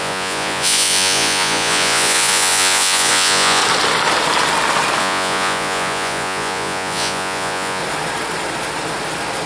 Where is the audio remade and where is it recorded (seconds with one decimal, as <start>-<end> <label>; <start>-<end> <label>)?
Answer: 0.0-3.6 remade; 3.6-5.0 recorded; 5.0-7.8 remade; 7.8-9.5 recorded